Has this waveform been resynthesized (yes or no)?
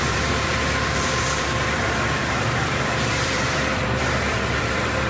yes